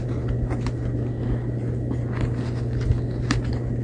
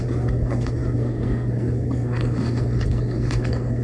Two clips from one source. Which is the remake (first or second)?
second